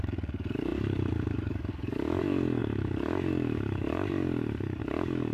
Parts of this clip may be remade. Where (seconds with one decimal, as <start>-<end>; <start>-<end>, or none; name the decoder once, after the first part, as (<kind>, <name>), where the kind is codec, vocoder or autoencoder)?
0.0-5.3 (codec, DAC)

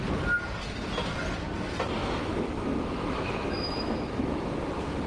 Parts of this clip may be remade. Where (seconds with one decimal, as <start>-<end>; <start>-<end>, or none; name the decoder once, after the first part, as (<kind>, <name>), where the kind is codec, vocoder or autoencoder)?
2.0-4.6 (autoencoder, DAC-VAE)

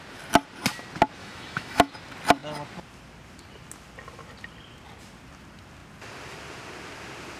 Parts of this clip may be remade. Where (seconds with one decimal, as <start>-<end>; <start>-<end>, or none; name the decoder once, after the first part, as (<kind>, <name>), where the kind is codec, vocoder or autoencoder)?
1.2-1.9 (autoencoder, DAC-VAE)

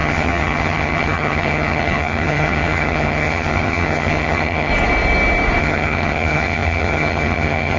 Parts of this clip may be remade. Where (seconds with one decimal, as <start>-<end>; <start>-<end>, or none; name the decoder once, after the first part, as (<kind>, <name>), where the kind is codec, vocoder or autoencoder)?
0.0-4.7 (vocoder, HiFi-GAN); 5.6-7.8

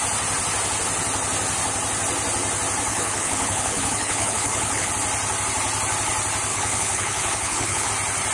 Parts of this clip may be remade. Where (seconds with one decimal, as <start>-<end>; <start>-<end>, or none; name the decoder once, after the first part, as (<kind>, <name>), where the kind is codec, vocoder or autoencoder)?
2.9-4.9 (codec, HILCodec); 6.5-7.9